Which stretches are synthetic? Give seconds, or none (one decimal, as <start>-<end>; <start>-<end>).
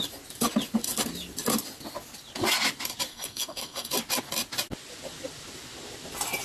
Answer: 3.1-3.9